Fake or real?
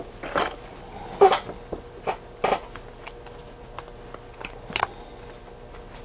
real